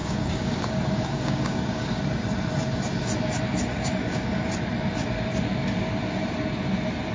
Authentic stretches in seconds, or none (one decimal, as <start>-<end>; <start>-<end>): 2.0-3.7; 4.5-7.1